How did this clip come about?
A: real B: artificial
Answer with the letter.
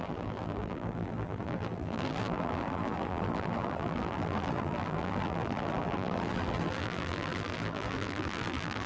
B